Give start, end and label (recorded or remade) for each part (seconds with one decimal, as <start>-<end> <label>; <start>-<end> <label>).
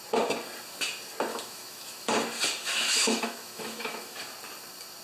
0.0-1.3 recorded; 1.3-2.1 remade; 2.1-2.6 recorded; 2.6-4.2 remade; 4.2-5.0 recorded